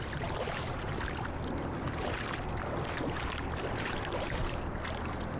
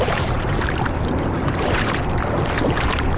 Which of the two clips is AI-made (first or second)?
second